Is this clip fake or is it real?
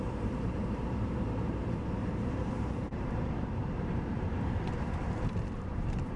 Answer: fake